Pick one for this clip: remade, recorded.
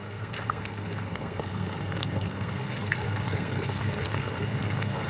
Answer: remade